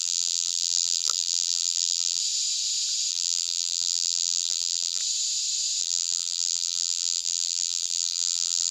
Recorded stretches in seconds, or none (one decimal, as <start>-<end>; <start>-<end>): 2.2-3.1; 5.0-5.8